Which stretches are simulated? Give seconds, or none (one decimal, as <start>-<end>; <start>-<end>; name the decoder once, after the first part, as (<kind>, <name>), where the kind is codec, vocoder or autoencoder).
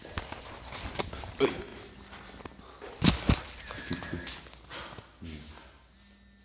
0.0-1.0 (vocoder, BigVGAN v2); 1.7-4.4